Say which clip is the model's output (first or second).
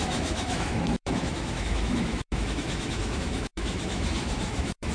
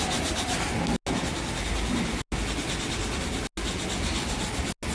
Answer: first